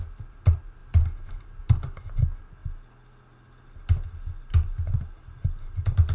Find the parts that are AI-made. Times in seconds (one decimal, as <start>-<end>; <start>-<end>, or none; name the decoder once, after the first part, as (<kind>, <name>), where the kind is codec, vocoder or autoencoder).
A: none